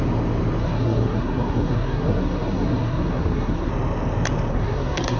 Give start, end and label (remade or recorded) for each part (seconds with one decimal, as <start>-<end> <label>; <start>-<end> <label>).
0.0-0.6 recorded; 0.6-3.7 remade; 3.7-4.5 recorded; 4.5-5.2 remade